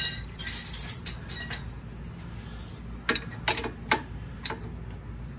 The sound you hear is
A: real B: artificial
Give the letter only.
A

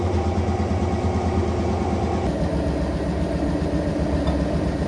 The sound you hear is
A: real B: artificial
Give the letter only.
A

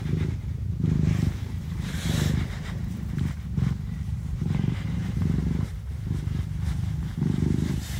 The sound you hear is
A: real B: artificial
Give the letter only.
B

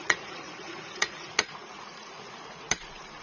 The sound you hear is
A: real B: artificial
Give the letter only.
B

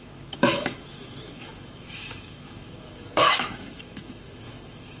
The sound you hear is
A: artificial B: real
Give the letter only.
A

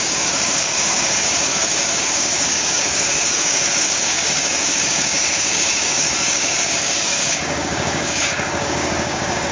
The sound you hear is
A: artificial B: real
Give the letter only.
A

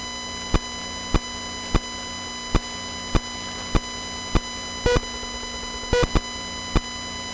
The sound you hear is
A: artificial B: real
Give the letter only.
B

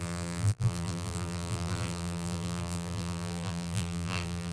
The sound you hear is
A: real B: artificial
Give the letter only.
B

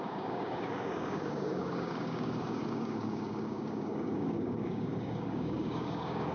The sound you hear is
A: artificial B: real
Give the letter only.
A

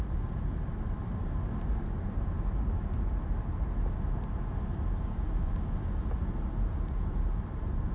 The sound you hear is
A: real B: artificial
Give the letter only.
A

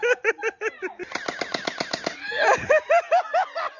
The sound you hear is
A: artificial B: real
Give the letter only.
B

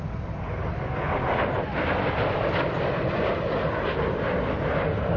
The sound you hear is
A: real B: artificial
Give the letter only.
A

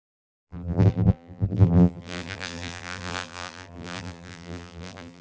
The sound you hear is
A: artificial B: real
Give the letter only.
A